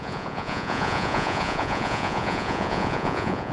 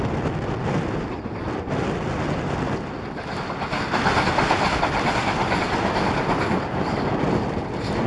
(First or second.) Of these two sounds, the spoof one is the first